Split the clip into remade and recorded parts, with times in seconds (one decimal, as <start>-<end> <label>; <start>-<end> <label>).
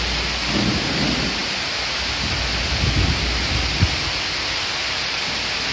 0.0-5.7 recorded